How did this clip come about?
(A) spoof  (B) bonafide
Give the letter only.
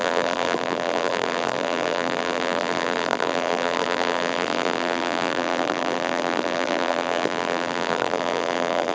A